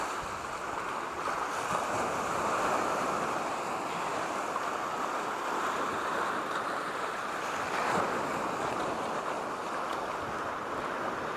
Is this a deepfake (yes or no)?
no